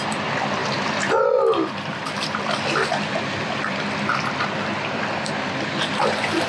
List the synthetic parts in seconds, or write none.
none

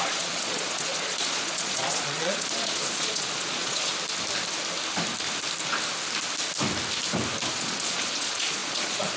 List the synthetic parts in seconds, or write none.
0.0-3.9 (vocoder, Vocos); 7.5-9.2

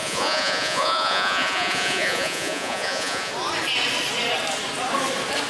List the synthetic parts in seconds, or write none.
0.0-3.3 (vocoder, Vocos)

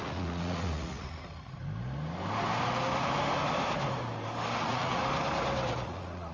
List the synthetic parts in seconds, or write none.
0.0-1.6 (vocoder, Vocos); 4.6-5.0; 5.7-6.3